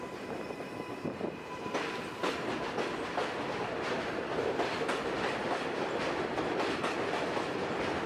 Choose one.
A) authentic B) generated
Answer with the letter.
A